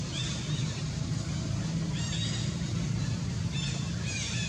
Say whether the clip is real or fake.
real